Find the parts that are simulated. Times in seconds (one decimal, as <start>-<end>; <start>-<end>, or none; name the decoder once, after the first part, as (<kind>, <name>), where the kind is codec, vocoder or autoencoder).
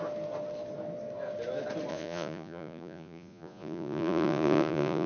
1.9-5.1 (vocoder, Vocos)